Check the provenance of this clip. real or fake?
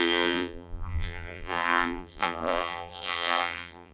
fake